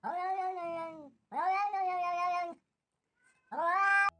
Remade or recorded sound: recorded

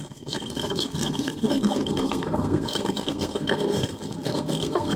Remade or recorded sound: remade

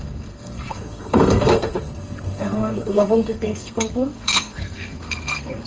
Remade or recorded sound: remade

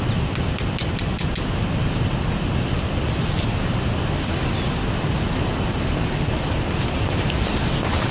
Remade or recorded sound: recorded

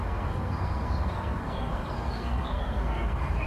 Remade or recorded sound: remade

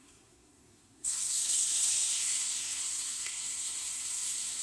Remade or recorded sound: remade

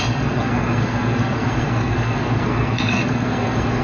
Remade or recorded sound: remade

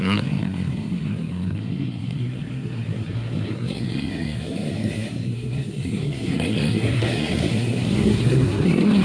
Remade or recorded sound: remade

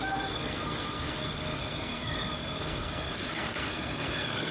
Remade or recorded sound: remade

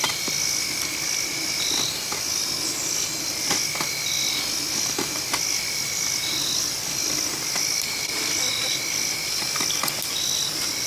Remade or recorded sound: recorded